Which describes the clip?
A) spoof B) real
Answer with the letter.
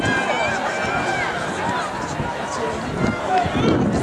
B